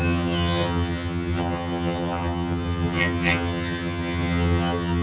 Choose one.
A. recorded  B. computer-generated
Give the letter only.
B